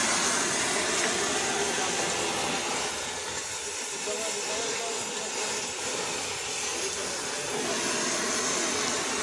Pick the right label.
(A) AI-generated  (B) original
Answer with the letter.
B